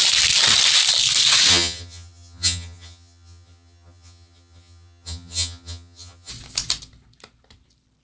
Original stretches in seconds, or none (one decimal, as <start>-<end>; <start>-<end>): 0.0-1.5; 6.3-8.0